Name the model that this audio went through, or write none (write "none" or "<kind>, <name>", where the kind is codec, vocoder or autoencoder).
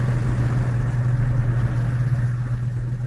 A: none